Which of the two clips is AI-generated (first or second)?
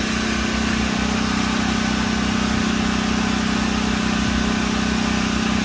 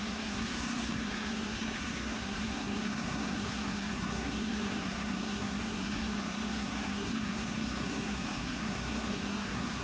second